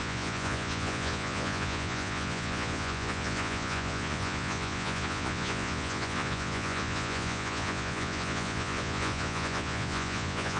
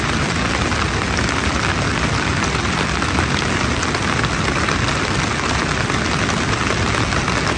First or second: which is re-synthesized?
first